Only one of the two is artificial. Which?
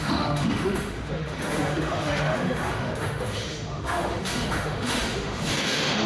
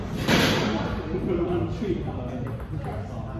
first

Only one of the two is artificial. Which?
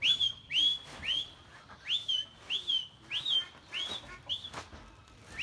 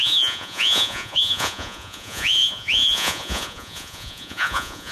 second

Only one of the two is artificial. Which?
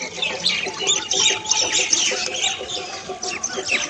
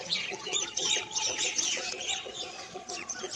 second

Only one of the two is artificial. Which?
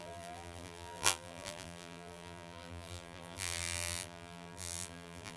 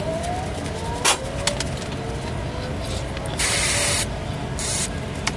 first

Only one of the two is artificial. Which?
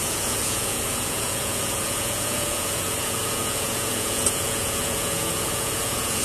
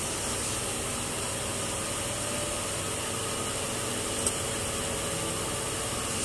first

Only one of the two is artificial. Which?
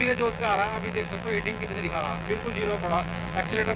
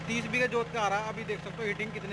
first